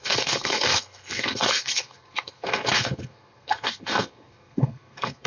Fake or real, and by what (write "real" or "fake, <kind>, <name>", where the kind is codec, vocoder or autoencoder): fake, codec, SNAC